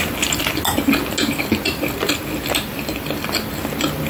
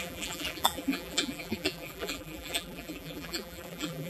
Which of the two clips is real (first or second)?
first